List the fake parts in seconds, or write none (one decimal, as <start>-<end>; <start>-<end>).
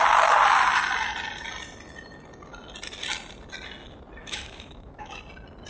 4.2-5.2